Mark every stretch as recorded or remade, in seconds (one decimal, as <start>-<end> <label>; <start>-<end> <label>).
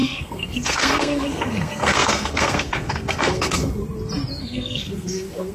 0.0-3.8 remade; 3.8-4.4 recorded; 4.4-5.5 remade